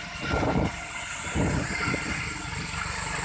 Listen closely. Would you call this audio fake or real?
real